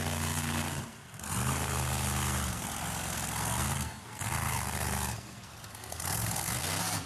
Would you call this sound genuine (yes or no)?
no